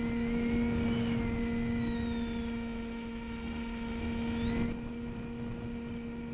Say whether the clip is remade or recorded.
recorded